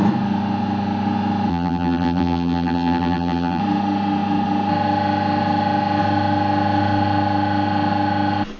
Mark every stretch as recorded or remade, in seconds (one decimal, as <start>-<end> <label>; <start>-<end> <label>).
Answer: 0.0-1.5 recorded; 1.5-3.6 remade; 3.6-8.6 recorded